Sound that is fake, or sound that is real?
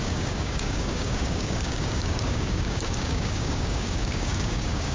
fake